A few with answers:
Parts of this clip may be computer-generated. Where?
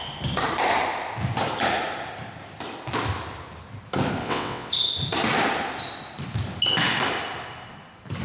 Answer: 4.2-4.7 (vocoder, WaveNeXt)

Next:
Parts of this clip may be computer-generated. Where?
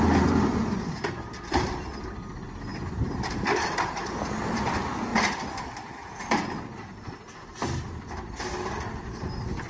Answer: none